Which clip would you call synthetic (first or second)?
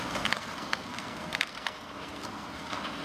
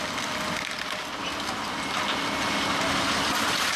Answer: first